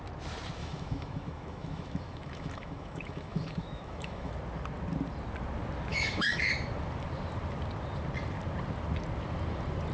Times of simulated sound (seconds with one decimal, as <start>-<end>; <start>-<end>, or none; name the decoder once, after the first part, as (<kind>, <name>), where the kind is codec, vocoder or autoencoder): 0.6-4.3 (autoencoder, DAC-VAE); 5.9-6.5